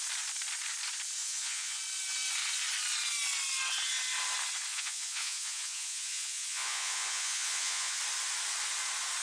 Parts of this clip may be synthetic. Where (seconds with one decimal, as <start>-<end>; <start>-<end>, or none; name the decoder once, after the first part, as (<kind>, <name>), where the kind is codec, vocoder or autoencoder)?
1.2-1.8 (vocoder, Vocos); 4.7-8.0